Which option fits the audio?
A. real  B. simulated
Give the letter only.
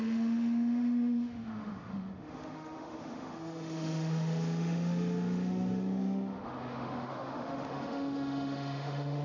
B